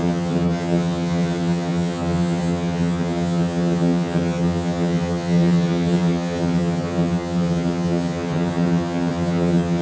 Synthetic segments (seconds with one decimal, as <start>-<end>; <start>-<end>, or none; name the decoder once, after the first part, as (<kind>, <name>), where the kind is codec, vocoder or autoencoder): 0.0-9.8 (vocoder, HiFi-GAN)